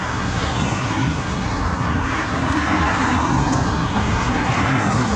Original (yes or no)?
no